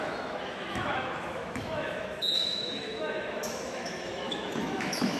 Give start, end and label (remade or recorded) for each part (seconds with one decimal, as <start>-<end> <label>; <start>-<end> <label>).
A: 0.0-5.2 remade